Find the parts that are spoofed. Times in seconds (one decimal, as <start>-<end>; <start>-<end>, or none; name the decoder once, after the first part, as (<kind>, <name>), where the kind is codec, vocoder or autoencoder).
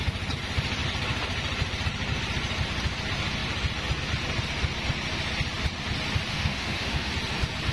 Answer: 6.3-7.1 (autoencoder, DAC-VAE)